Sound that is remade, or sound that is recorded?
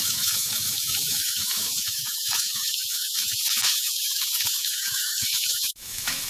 remade